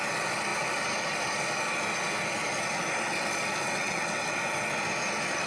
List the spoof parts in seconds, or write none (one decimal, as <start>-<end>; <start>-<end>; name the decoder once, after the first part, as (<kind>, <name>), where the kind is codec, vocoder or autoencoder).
3.6-4.4 (vocoder, WaveNeXt)